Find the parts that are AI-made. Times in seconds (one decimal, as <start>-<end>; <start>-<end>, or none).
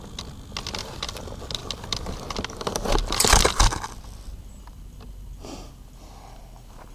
none